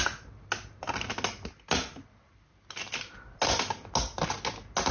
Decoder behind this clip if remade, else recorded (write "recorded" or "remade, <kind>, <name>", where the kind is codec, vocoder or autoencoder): recorded